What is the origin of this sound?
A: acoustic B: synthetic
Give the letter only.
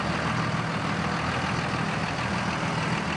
A